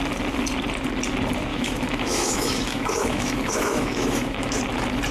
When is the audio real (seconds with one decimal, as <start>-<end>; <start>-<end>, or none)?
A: 0.0-1.5; 4.6-5.1